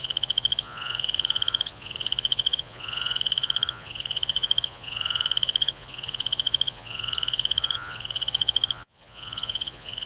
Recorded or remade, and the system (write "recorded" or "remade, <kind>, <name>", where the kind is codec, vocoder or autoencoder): remade, vocoder, Vocos